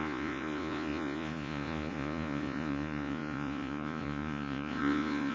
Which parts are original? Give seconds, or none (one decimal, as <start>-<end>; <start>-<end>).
none